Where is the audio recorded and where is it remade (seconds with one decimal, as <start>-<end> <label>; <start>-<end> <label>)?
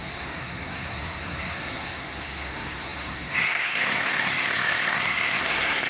0.0-5.9 remade